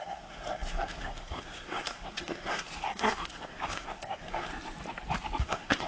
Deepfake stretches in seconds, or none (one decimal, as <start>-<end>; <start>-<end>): 0.0-4.5; 5.4-5.9